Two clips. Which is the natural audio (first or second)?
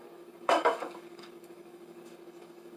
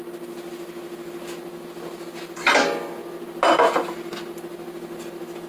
second